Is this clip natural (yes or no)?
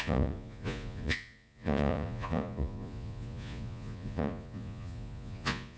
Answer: no